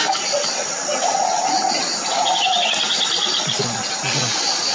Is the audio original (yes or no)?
yes